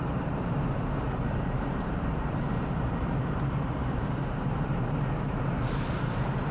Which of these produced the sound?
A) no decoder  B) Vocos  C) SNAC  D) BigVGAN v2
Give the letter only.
D